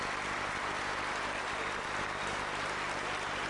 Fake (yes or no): no